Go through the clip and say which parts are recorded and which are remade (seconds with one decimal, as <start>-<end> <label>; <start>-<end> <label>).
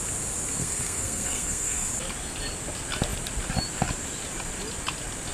0.0-0.6 recorded; 0.6-1.9 remade; 1.9-5.3 recorded